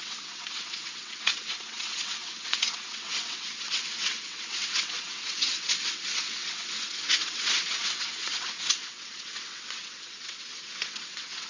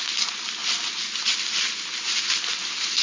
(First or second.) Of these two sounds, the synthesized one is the first